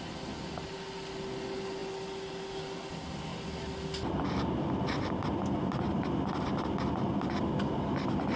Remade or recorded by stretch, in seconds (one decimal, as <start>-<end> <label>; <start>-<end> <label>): 0.0-8.4 recorded